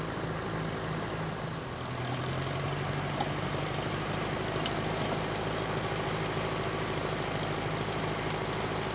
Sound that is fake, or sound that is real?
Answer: real